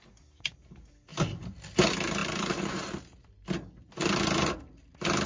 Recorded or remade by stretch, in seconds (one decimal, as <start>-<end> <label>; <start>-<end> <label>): 0.0-1.1 recorded; 1.1-1.6 remade; 1.6-2.2 recorded; 2.2-3.0 remade; 3.0-5.3 recorded

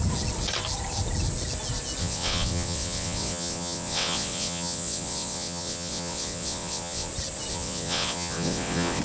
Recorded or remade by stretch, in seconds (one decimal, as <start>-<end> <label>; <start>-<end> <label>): 0.0-2.0 recorded; 2.0-7.1 remade; 7.1-7.5 recorded; 7.5-9.0 remade

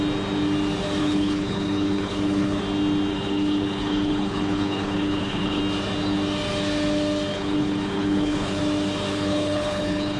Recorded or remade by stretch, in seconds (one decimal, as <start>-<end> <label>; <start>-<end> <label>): 0.0-1.0 recorded; 1.0-2.6 remade; 2.6-3.1 recorded; 3.1-5.6 remade; 5.6-7.3 recorded; 7.3-8.6 remade; 8.6-9.1 recorded; 9.1-10.2 remade

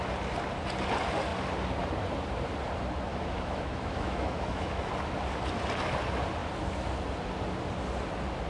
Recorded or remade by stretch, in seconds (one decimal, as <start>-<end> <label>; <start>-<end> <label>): 0.0-3.1 recorded; 3.1-4.9 remade; 4.9-8.5 recorded

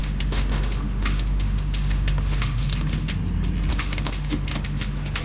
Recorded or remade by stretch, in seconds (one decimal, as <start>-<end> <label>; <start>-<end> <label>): 0.0-3.1 remade; 3.1-3.7 recorded; 3.7-5.2 remade

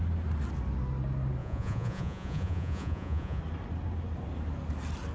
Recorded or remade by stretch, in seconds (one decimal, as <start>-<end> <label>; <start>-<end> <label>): 0.0-1.4 recorded; 1.4-3.4 remade; 3.4-5.1 recorded